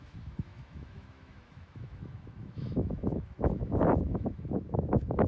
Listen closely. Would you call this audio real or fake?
fake